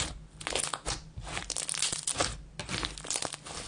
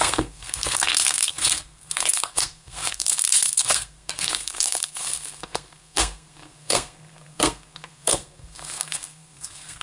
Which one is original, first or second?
first